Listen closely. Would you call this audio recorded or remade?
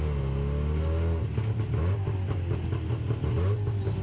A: recorded